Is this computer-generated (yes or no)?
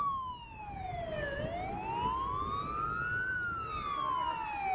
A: no